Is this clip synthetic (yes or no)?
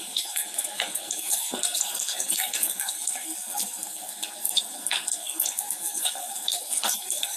yes